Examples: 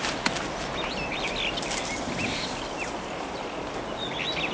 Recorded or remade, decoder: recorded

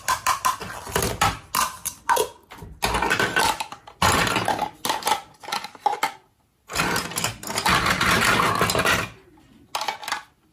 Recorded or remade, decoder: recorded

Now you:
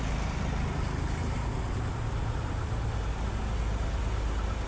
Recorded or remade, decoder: recorded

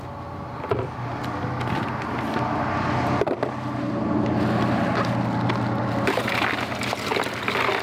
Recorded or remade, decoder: recorded